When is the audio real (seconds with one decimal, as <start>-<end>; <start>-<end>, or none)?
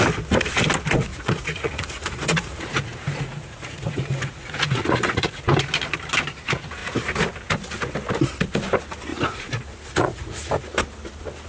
0.0-1.1; 5.4-9.1; 10.5-11.5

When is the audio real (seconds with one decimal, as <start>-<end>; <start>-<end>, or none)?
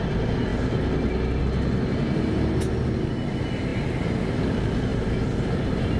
0.0-4.9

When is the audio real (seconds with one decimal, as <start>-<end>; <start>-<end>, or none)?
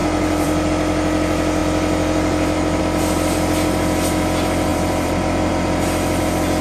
0.7-1.6; 2.8-4.7; 5.5-6.6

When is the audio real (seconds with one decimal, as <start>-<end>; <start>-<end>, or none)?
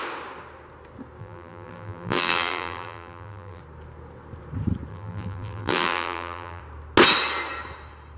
0.0-1.2; 3.6-4.9; 6.6-8.2